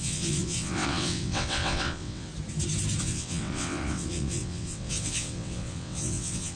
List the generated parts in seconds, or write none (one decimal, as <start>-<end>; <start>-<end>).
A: 0.0-2.3; 3.0-6.6